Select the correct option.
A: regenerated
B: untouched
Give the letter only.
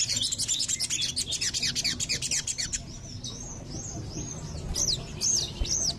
B